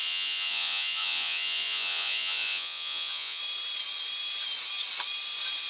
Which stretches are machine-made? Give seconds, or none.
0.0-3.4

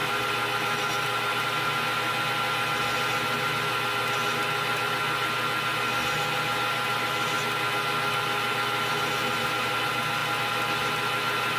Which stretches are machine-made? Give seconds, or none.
none

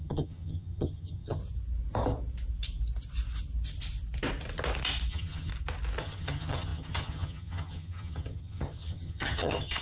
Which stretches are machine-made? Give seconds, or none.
0.0-1.4; 5.1-5.5; 6.0-9.8

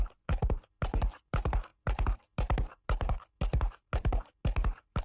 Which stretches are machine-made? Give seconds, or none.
0.0-5.0

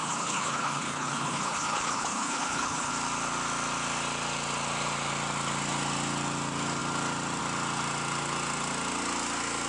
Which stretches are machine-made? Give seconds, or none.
0.0-2.9

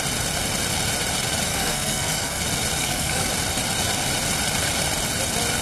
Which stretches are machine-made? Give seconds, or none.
1.5-2.4; 2.8-3.3

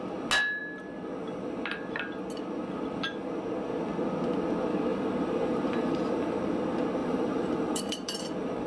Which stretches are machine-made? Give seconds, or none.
4.9-6.6; 7.0-8.7